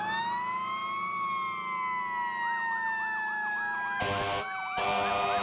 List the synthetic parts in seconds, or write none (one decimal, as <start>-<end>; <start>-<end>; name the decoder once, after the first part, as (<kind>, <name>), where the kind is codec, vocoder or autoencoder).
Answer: none